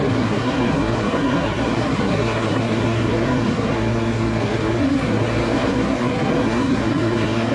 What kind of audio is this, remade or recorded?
remade